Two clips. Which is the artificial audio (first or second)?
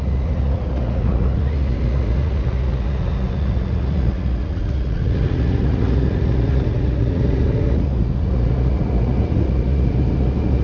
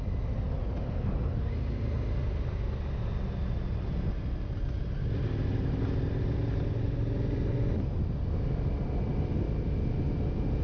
first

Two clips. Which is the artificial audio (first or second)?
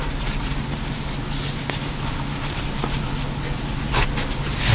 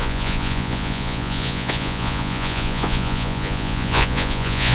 second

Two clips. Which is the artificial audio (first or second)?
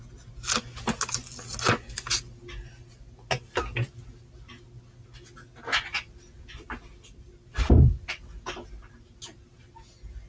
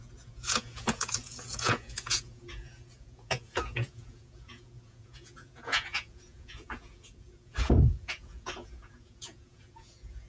second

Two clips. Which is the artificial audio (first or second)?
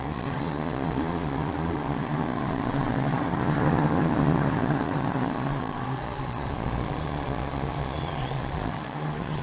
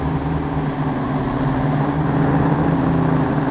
first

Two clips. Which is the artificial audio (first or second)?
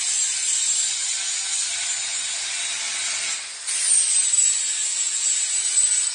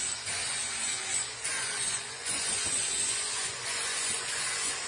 second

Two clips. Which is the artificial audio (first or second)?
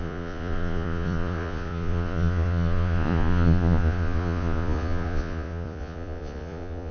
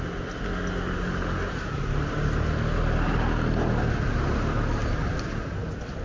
first